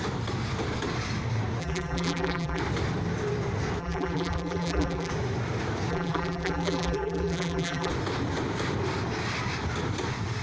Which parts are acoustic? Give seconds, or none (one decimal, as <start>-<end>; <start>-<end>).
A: 0.0-1.6; 2.6-3.8; 5.1-5.9; 7.9-10.4